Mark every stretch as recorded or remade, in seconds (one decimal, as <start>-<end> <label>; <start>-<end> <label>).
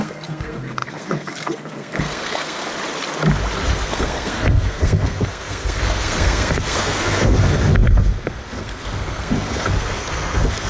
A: 0.0-2.6 remade; 2.6-3.6 recorded; 3.6-10.7 remade